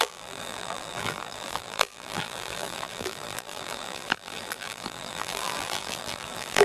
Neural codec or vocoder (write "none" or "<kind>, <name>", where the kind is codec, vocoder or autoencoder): vocoder, BigVGAN v2